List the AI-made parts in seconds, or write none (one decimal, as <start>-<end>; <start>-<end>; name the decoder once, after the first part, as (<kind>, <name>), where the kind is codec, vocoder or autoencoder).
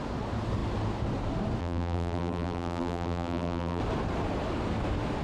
1.6-3.8 (vocoder, BigVGAN v2)